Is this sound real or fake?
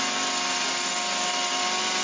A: real